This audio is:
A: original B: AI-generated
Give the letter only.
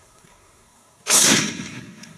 B